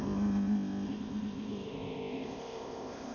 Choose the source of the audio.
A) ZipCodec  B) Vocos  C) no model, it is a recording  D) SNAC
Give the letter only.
A